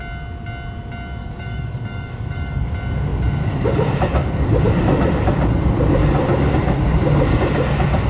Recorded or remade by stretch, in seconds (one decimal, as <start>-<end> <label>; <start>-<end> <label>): 0.0-1.2 recorded; 1.2-2.7 remade; 2.7-8.1 recorded